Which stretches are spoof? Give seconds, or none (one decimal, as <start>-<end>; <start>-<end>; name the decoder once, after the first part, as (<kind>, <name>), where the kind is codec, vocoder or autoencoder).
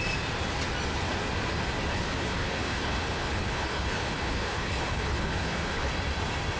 1.9-5.9 (codec, HILCodec)